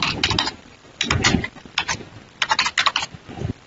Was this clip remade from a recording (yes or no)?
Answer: no